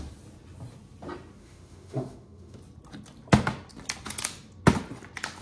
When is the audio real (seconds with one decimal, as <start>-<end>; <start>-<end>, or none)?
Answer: 0.0-1.4; 2.6-5.4